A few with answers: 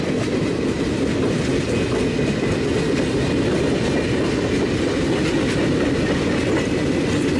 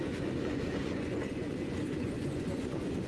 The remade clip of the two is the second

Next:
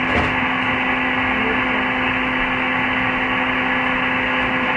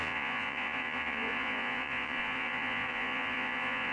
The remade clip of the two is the second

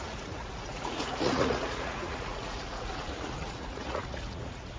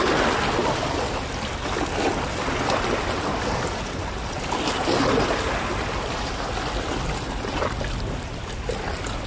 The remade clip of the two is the first